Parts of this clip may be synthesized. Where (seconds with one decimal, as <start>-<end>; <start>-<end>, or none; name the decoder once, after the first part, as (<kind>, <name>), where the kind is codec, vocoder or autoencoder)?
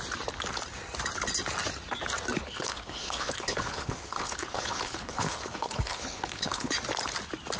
2.4-6.7 (codec, HILCodec)